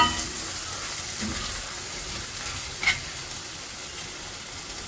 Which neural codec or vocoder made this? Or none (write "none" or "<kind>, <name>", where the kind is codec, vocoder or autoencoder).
none